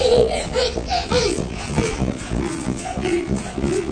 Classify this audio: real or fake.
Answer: fake